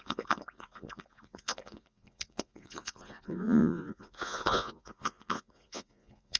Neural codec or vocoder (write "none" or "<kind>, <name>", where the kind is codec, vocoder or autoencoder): vocoder, Vocos